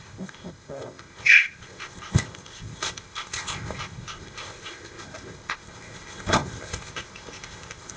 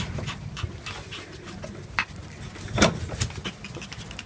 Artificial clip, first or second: first